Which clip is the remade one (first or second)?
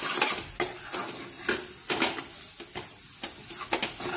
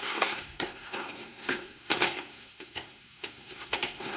second